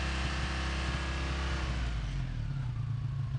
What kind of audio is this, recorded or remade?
recorded